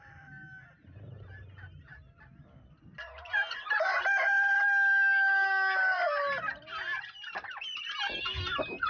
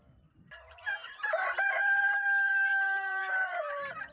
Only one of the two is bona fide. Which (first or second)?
first